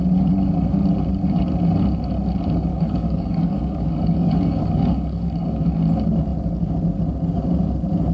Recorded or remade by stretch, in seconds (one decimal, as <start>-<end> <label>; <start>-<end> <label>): 0.0-2.7 recorded; 2.7-5.7 remade; 5.7-8.1 recorded